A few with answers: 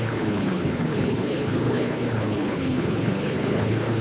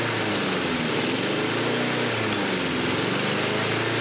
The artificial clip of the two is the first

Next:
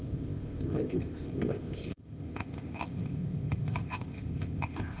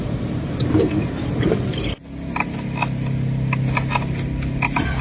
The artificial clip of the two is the first